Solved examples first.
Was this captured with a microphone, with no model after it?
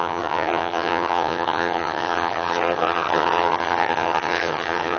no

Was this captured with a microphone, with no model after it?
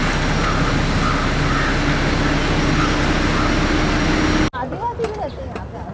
yes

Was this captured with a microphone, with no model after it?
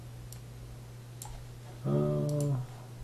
yes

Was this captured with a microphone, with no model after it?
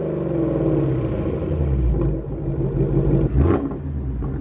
yes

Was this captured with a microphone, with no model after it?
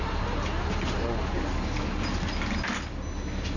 yes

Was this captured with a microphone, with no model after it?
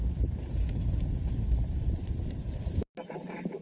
no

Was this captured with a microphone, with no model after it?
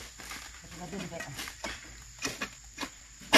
yes